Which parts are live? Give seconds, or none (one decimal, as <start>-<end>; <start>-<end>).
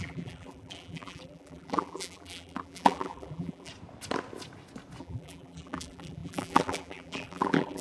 3.7-5.0